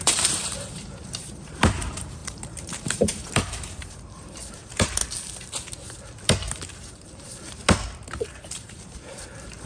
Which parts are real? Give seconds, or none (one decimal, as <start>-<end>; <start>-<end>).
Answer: 5.0-6.5; 7.6-8.2